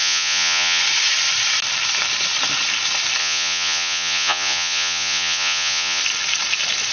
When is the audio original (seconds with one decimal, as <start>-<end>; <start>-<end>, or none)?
0.8-3.2; 6.0-6.9